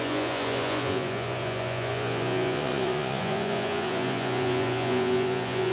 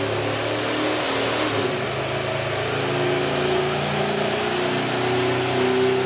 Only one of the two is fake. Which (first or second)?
first